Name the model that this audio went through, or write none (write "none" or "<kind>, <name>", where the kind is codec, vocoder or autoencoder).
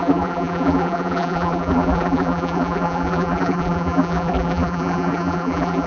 vocoder, BigVGAN v2